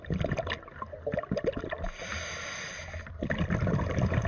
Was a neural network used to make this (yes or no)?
no